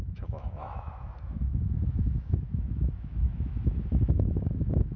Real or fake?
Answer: fake